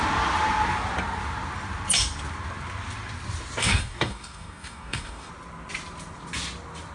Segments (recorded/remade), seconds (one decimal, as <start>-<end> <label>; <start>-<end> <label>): 0.0-3.6 recorded; 3.6-5.3 remade; 5.3-6.9 recorded